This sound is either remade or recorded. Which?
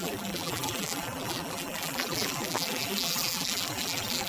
remade